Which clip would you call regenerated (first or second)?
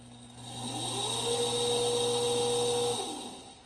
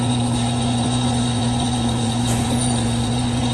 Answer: second